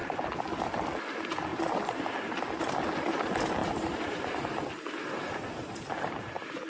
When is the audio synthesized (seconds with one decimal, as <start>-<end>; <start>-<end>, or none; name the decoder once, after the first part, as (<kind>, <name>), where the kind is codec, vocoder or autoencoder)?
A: 3.6-6.7 (vocoder, BigVGAN v2)